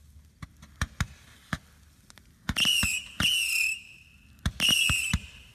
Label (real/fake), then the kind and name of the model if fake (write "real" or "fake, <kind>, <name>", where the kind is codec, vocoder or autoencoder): real